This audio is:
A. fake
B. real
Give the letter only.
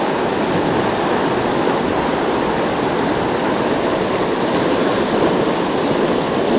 B